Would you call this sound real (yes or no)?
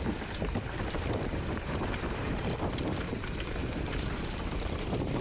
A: no